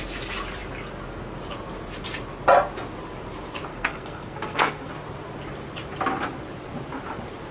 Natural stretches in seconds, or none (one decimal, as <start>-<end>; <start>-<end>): 0.0-3.7; 4.9-7.5